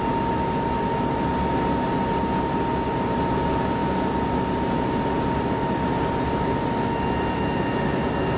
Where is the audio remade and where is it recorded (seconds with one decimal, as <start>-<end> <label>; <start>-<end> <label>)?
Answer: 0.0-8.4 recorded